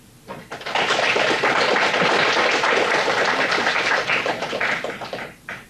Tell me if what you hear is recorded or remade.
recorded